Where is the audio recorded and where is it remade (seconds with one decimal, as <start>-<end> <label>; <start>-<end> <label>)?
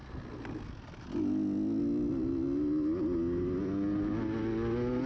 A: 0.0-5.1 recorded